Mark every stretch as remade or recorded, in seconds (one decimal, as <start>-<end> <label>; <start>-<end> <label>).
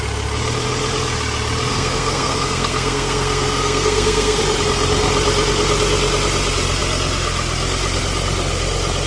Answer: 0.0-1.7 recorded; 1.7-4.4 remade; 4.4-9.1 recorded